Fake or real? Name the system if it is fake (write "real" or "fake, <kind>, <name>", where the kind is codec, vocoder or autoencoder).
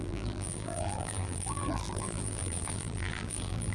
fake, vocoder, BigVGAN v2